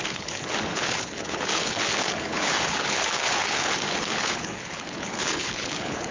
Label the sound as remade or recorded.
remade